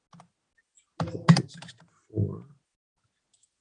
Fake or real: real